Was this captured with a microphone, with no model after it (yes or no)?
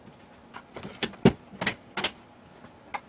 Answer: yes